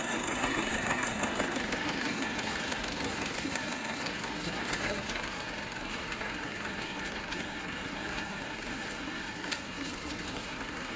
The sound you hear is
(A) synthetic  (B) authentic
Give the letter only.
A